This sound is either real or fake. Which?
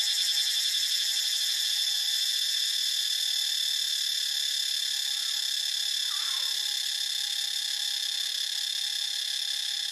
real